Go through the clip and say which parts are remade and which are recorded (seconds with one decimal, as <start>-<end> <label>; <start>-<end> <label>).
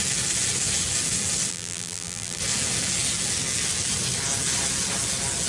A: 0.0-1.5 recorded; 1.5-2.4 remade; 2.4-5.5 recorded